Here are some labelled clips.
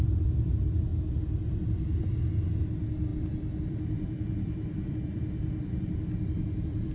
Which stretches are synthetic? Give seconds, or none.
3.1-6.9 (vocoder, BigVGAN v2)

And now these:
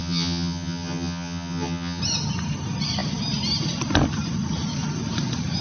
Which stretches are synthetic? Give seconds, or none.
0.0-2.0 (vocoder, HiFi-GAN)

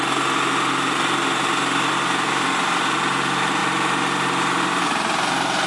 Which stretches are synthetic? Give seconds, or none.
none

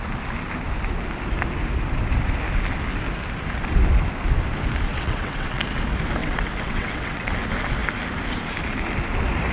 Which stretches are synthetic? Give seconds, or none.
4.9-5.6 (vocoder, WaveNeXt); 6.2-7.3

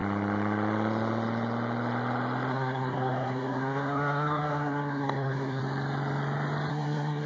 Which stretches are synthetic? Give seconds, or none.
2.5-5.6 (codec, SNAC); 6.7-7.3

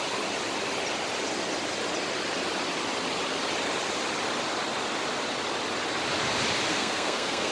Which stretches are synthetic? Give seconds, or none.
6.7-7.5 (codec, SNAC)

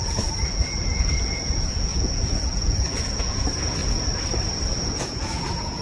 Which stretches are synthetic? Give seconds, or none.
0.0-3.8 (vocoder, Vocos); 4.8-5.8